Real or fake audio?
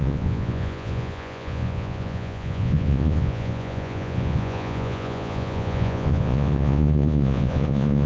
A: fake